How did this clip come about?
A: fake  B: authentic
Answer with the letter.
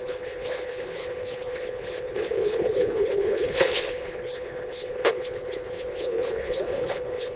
A